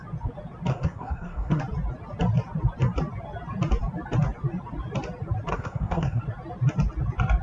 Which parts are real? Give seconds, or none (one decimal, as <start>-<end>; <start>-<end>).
0.0-0.7; 1.6-5.5; 6.2-7.4